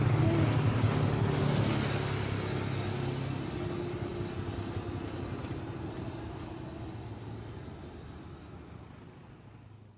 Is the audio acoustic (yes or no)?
yes